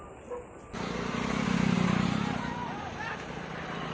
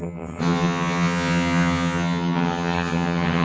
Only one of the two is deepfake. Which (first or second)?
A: second